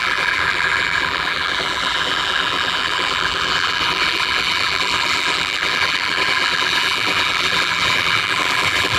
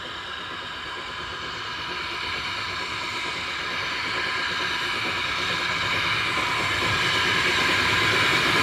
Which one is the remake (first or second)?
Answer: first